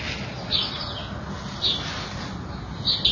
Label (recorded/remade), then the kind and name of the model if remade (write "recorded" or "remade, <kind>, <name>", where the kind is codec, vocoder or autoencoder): recorded